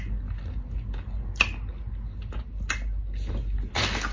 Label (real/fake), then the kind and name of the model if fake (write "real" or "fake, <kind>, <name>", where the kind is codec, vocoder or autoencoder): real